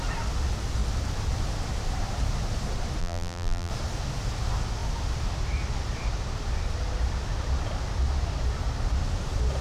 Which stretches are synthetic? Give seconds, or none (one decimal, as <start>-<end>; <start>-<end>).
3.0-3.7